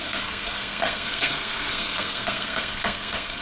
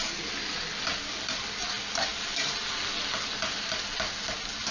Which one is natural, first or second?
second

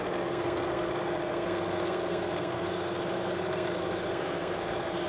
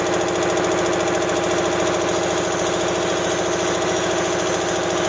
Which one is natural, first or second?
second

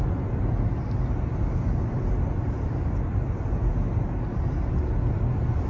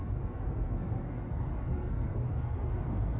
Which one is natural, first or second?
first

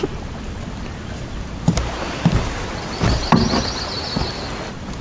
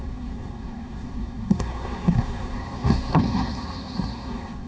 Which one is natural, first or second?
first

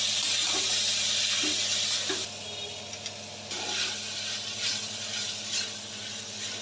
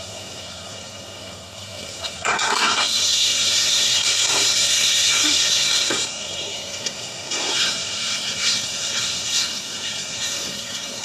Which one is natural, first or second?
first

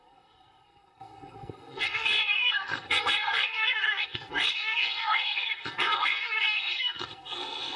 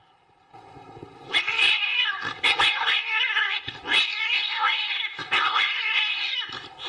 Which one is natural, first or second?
second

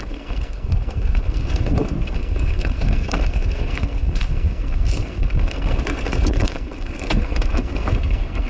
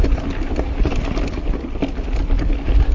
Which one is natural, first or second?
second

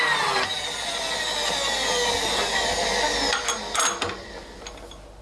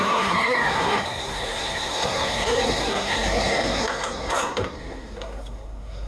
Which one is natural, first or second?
first